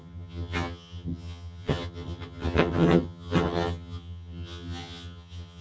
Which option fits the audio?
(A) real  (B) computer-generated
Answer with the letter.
B